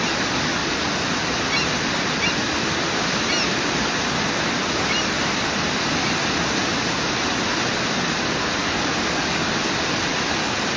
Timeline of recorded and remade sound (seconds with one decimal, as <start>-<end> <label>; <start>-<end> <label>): 0.0-10.8 recorded